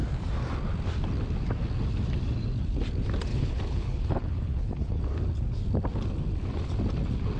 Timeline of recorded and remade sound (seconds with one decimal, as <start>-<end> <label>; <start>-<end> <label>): 0.0-3.3 recorded; 3.3-5.0 remade; 5.0-7.4 recorded